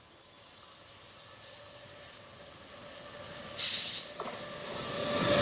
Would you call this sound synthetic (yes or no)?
no